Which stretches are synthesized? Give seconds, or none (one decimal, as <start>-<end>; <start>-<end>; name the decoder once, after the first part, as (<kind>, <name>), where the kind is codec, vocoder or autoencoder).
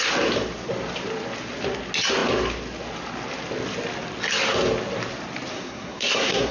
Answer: 5.5-6.5 (codec, SNAC)